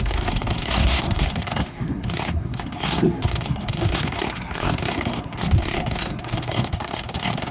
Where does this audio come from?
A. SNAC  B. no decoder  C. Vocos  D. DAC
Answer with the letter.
A